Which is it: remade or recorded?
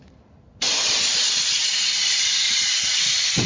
recorded